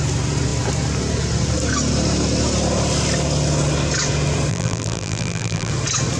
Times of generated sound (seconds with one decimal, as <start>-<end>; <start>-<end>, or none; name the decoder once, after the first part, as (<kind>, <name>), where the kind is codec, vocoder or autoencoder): 4.5-5.7 (vocoder, BigVGAN v2)